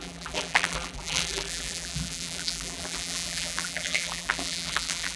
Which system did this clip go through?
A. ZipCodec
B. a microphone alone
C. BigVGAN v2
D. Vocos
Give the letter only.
C